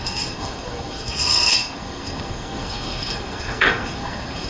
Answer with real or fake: fake